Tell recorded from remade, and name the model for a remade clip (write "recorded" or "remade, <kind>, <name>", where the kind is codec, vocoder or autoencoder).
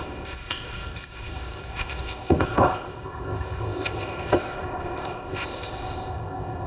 remade, codec, ZipCodec